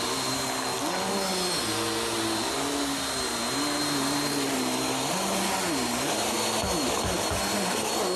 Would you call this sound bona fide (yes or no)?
yes